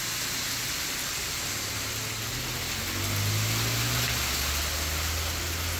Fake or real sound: real